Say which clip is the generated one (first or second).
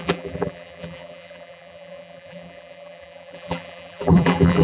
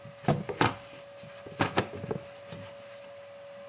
first